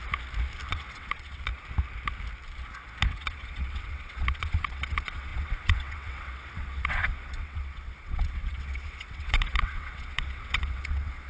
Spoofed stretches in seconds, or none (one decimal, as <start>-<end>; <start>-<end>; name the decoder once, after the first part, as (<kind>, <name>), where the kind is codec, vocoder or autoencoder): 0.7-1.5 (vocoder, WaveNeXt); 3.1-11.3

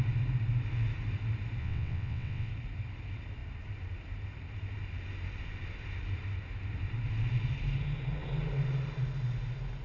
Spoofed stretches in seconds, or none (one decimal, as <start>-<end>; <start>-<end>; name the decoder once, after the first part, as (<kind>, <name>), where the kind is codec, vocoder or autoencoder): 1.6-2.5 (vocoder, WaveNeXt)